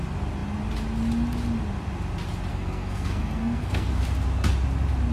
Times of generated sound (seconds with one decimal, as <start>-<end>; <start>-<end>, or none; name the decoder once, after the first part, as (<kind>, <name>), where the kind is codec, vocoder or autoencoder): 2.5-4.0 (codec, SNAC)